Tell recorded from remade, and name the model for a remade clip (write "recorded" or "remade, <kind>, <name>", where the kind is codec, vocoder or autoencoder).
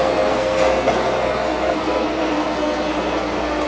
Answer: remade, codec, SNAC